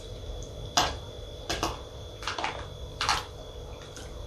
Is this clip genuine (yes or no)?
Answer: yes